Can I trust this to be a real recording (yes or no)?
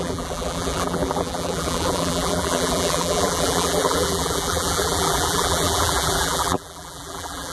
no